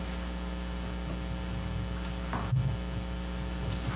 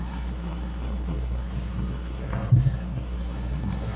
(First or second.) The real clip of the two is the first